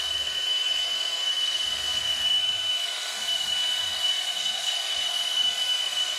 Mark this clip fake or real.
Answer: fake